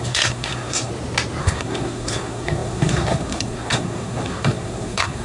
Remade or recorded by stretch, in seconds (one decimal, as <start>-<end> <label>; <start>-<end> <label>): 0.0-0.9 remade; 0.9-1.4 recorded; 1.4-5.2 remade